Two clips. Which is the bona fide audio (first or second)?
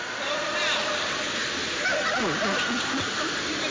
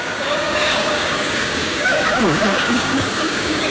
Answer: first